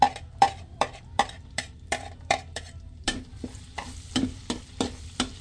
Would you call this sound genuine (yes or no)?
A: no